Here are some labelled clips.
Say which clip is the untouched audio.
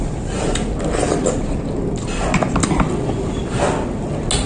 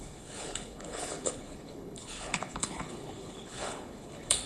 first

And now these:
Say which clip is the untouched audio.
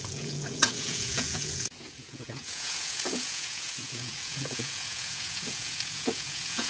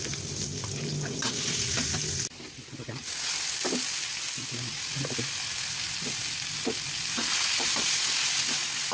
second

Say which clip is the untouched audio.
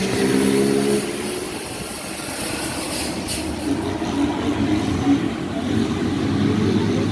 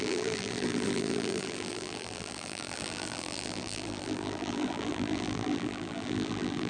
first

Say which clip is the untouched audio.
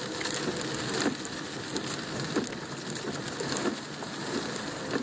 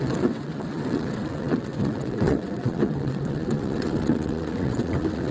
first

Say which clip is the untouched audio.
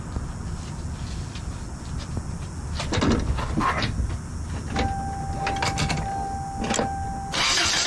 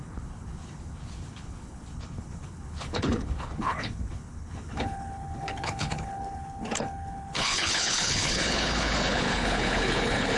first